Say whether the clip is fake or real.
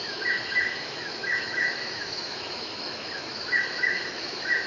fake